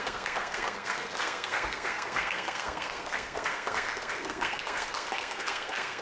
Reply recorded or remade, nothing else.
remade